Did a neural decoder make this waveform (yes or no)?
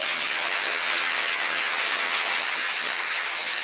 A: yes